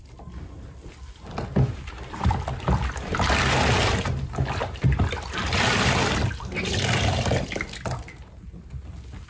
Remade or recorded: recorded